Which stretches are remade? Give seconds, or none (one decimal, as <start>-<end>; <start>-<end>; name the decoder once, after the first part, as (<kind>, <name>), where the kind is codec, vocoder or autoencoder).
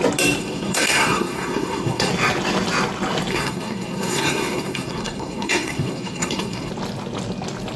0.4-2.1 (codec, SNAC); 3.3-6.7